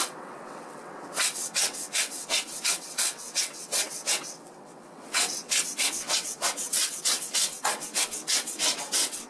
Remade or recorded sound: remade